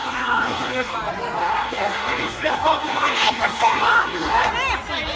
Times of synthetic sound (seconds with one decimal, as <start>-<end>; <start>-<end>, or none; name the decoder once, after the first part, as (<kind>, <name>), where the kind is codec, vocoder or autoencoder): 0.0-0.9 (codec, SNAC); 1.4-4.5

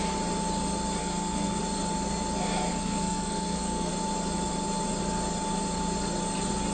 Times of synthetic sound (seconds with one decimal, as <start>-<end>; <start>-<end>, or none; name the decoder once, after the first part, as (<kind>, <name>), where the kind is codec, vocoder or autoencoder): 1.0-1.6 (codec, SNAC); 2.7-3.9